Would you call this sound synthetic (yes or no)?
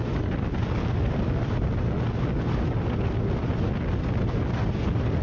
no